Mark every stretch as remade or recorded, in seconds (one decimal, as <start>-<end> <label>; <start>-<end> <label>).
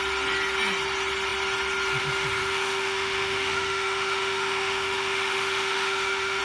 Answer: 0.0-2.4 recorded; 2.4-6.4 remade